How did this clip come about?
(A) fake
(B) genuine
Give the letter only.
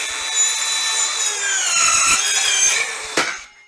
B